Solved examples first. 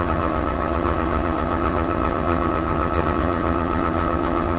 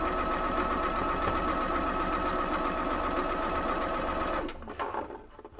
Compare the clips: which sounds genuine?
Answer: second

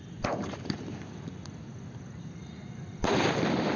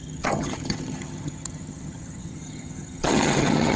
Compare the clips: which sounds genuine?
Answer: first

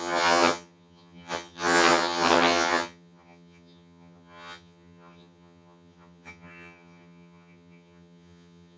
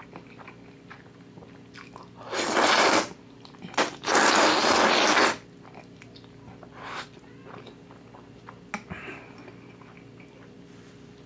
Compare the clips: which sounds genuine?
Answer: second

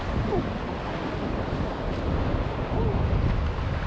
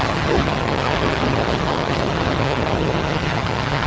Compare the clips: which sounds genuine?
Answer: first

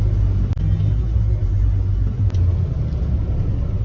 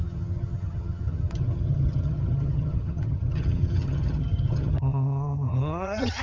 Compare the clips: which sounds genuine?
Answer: first